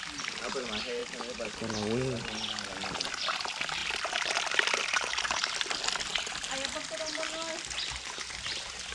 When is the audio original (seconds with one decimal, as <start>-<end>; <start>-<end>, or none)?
0.0-8.9